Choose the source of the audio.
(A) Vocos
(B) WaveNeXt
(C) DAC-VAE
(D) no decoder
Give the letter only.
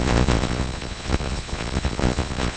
A